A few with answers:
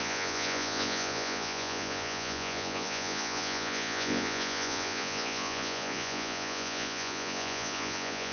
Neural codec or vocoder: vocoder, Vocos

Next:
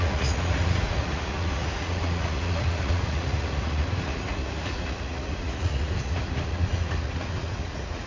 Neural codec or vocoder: vocoder, Vocos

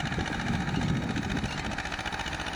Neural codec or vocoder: none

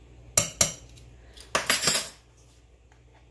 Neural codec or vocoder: none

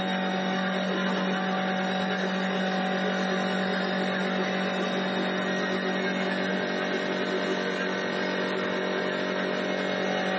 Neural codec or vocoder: none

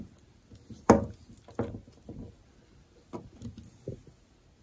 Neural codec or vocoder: none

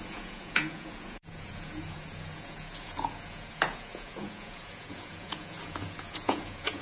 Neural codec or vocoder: vocoder, Vocos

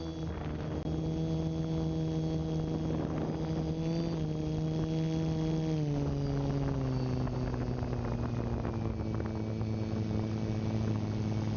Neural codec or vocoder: none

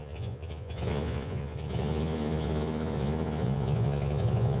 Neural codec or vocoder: vocoder, Vocos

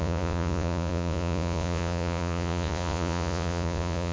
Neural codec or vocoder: vocoder, Vocos